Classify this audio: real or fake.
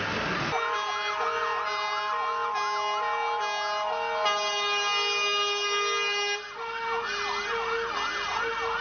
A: real